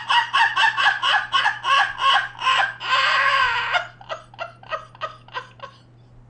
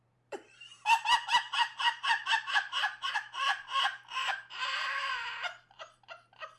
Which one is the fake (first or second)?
second